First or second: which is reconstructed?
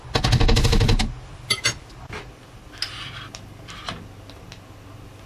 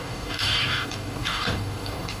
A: second